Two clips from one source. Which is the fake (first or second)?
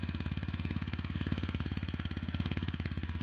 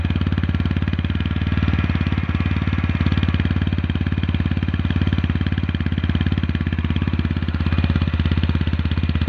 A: first